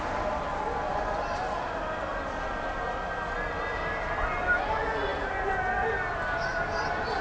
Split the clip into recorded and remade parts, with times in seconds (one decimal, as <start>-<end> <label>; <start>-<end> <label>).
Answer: 0.0-7.2 recorded